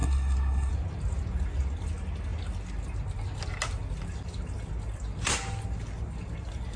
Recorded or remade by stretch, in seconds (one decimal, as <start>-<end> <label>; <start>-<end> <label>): 0.0-0.7 remade; 0.7-6.8 recorded